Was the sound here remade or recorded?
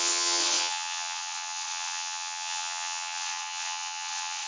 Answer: remade